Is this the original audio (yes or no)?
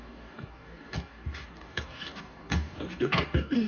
no